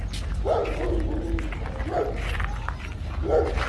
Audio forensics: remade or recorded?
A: recorded